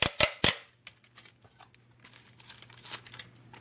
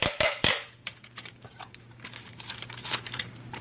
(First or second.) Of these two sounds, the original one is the first